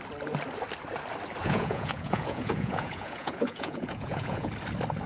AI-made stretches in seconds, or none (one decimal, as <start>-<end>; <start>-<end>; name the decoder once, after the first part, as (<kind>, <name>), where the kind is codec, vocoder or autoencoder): 1.4-4.5 (vocoder, Vocos)